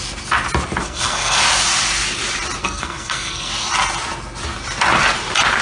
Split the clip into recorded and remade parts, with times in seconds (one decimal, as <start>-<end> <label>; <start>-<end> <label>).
0.0-0.8 recorded; 0.8-1.4 remade; 1.4-2.6 recorded; 2.6-3.5 remade; 3.5-5.6 recorded